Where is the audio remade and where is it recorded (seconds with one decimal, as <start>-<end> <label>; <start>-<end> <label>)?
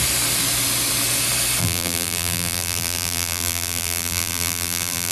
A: 0.0-1.6 recorded; 1.6-5.1 remade